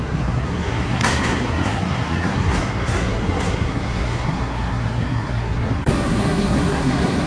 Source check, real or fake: fake